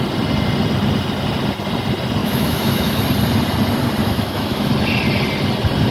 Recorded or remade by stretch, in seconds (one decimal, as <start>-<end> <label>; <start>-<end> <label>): 0.0-2.2 recorded; 2.2-3.0 remade; 3.0-4.0 recorded; 4.0-4.7 remade; 4.7-5.9 recorded